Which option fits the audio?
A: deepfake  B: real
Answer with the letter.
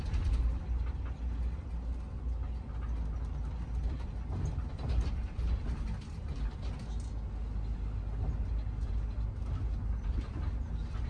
B